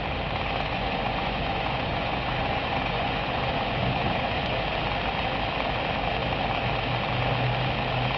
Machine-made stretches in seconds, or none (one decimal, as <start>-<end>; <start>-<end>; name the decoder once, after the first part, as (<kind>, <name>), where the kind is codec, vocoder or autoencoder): 0.7-4.6 (vocoder, Vocos)